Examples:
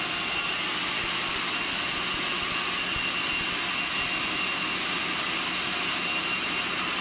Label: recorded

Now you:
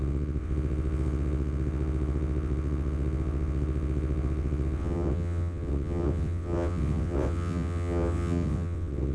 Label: remade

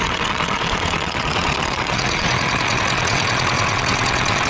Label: remade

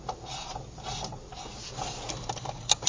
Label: recorded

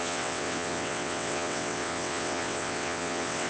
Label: remade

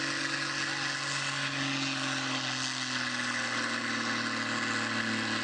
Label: recorded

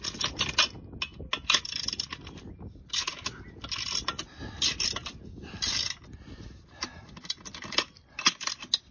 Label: recorded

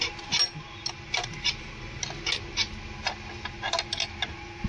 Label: recorded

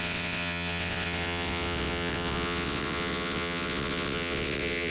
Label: remade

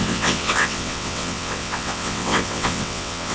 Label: remade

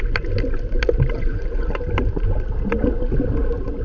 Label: recorded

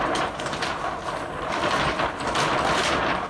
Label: recorded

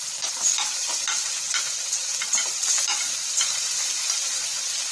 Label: recorded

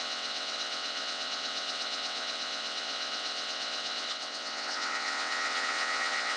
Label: remade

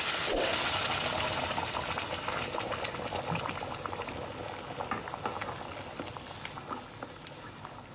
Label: recorded